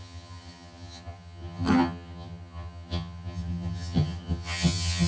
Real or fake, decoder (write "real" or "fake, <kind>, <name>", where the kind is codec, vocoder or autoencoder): fake, vocoder, HiFi-GAN